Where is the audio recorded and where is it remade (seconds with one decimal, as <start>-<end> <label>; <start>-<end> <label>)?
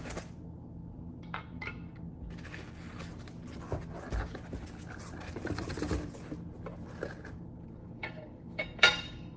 0.0-7.8 recorded; 7.8-9.4 remade